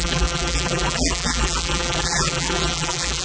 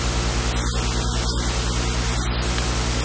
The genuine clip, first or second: second